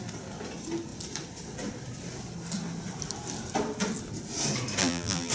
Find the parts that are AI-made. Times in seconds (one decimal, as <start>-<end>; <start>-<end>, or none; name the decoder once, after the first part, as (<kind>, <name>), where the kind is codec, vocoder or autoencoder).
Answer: 4.8-5.3 (vocoder, BigVGAN v2)